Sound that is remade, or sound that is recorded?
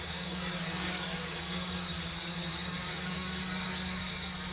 remade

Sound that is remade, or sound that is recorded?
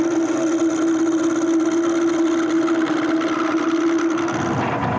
recorded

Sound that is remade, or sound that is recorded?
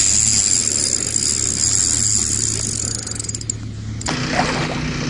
recorded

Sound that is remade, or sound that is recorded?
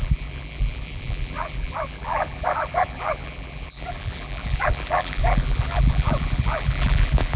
remade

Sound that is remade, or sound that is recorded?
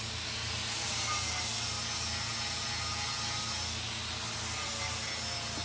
recorded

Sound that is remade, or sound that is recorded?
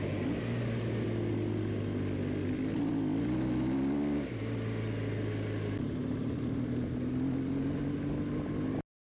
recorded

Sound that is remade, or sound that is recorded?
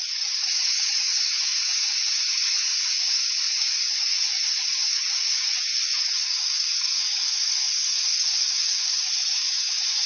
remade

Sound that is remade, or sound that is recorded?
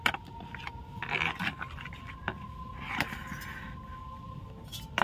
recorded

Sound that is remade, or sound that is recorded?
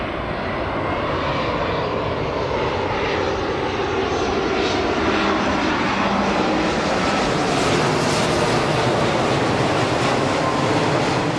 recorded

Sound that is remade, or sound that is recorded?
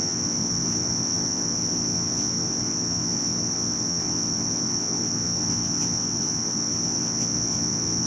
remade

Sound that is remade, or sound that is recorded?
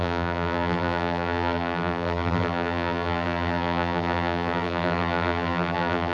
remade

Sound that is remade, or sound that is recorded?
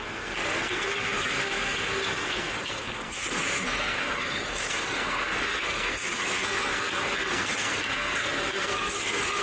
remade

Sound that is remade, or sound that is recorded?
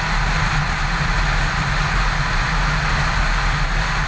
recorded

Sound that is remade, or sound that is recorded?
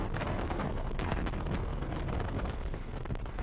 remade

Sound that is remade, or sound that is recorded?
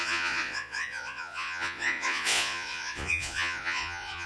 remade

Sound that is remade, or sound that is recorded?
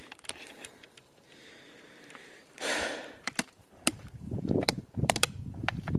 remade